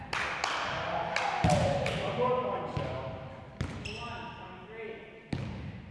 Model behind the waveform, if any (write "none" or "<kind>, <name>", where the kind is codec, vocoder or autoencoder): none